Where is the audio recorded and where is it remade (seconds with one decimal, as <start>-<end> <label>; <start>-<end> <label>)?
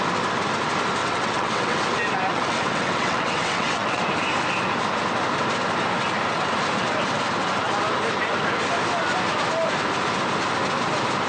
0.0-1.0 recorded; 1.0-1.8 remade; 1.8-2.3 recorded; 2.3-4.0 remade; 4.0-11.3 recorded